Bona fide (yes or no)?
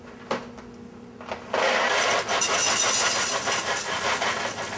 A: yes